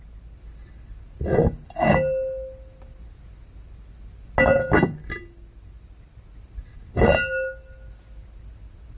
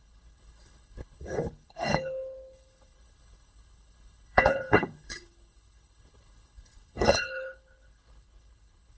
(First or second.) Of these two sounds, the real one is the first